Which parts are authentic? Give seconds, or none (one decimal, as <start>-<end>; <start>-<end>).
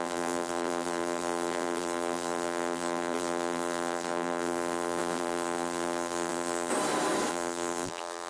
6.7-7.3